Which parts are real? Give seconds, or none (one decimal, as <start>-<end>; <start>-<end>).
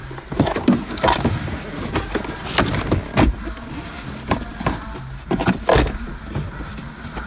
0.0-7.3